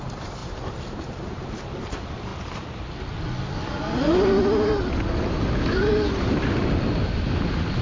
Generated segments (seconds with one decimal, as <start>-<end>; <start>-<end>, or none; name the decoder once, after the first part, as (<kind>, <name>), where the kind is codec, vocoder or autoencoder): 0.0-2.3 (vocoder, BigVGAN v2); 6.1-7.8